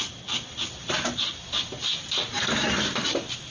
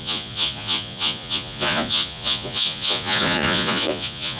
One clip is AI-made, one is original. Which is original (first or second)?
first